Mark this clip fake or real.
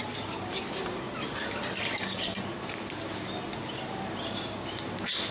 real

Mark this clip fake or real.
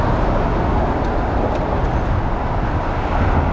real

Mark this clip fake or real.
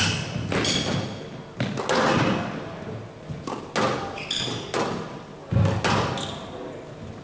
real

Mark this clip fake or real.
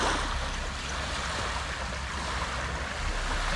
real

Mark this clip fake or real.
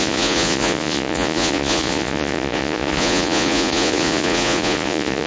fake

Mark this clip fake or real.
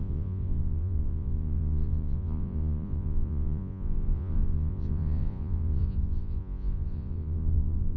fake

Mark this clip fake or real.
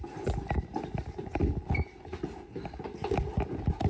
real